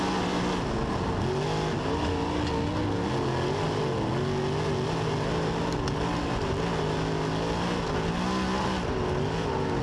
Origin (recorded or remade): recorded